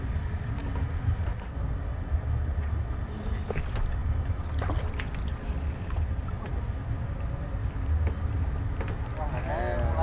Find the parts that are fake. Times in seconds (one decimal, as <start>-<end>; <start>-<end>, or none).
none